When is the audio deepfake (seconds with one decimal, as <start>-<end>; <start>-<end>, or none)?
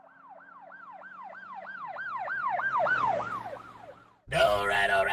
none